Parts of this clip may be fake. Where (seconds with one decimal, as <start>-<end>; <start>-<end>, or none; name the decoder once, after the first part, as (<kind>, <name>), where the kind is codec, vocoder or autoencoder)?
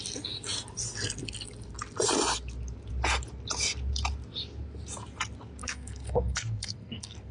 5.6-7.3 (codec, SNAC)